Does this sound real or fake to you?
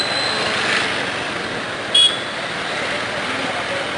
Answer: real